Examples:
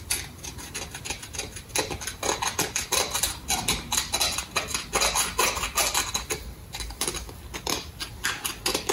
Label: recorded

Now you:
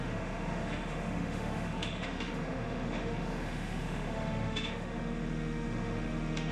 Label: remade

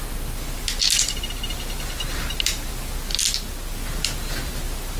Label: recorded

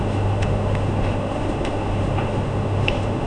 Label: remade